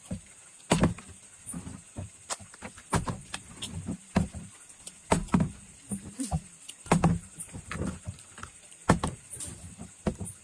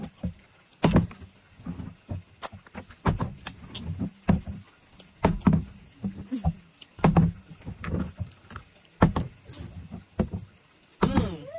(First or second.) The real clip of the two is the second